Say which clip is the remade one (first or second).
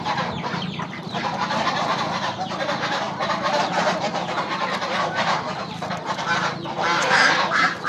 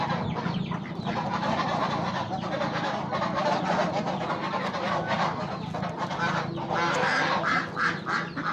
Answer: first